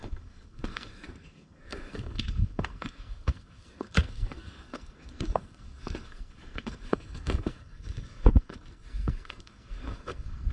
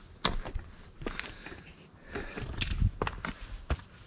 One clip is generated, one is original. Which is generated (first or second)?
first